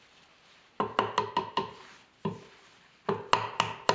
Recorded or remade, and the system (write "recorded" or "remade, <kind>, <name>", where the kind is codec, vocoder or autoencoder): recorded